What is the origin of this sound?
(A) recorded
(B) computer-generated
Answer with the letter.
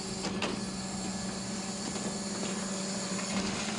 A